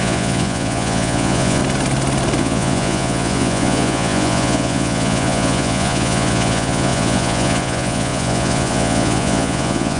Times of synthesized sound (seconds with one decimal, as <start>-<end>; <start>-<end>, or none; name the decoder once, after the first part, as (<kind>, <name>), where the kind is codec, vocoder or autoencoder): 0.0-1.6 (vocoder, Vocos); 2.4-10.0